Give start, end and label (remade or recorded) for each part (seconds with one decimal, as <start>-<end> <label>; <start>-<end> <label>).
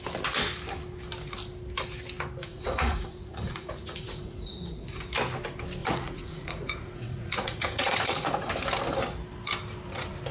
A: 0.0-2.4 recorded; 2.4-5.0 remade; 5.0-5.8 recorded; 5.8-8.5 remade; 8.5-10.3 recorded